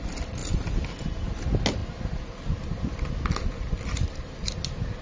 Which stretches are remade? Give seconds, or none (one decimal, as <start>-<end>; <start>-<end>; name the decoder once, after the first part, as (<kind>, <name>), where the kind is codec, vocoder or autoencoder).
none